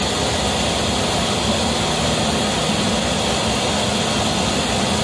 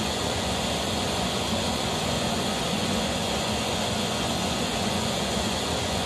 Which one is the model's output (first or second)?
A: second